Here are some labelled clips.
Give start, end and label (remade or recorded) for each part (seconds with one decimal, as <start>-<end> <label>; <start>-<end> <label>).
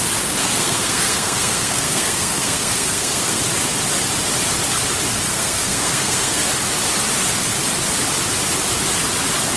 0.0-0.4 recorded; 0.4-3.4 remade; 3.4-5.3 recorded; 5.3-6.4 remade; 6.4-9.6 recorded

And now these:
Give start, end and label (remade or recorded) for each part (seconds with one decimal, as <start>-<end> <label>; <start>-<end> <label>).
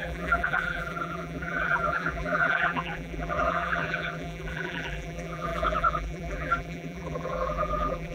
0.0-8.1 remade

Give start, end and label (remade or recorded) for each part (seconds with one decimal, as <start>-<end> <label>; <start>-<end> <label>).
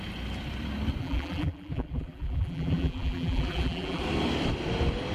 0.0-1.0 recorded; 1.0-4.0 remade; 4.0-5.1 recorded